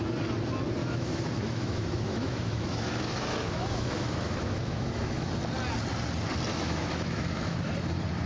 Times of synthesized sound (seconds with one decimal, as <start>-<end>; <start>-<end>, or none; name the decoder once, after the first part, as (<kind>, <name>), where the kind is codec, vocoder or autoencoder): 0.8-5.3 (autoencoder, DAC-VAE); 6.5-7.7